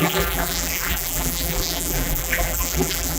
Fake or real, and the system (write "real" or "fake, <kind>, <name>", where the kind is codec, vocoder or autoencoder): fake, vocoder, BigVGAN v2